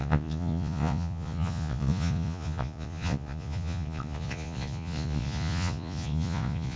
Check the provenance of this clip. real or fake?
fake